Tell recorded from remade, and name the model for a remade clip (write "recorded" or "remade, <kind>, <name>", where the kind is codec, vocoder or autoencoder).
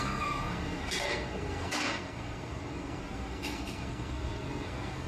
remade, codec, SNAC